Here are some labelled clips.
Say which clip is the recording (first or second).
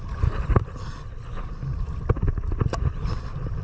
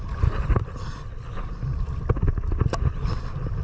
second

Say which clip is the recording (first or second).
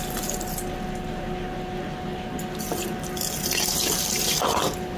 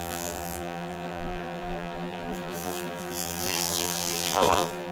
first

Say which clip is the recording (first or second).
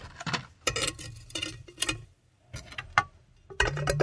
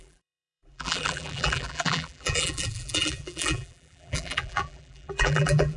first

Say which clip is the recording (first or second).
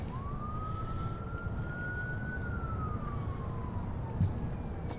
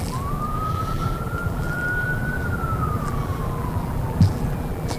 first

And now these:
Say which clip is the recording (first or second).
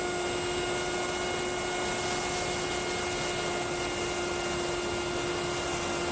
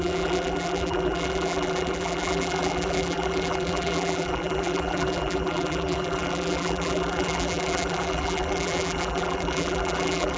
first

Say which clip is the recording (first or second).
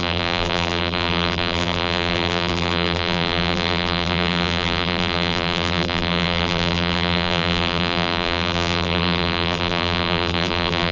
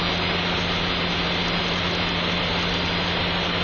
second